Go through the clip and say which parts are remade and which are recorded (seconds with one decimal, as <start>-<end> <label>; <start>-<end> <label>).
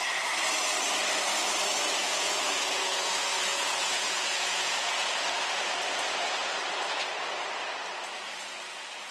0.0-2.0 recorded; 2.0-3.1 remade; 3.1-3.5 recorded; 3.5-5.1 remade; 5.1-9.1 recorded